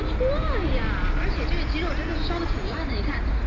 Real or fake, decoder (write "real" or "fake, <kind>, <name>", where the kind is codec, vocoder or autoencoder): real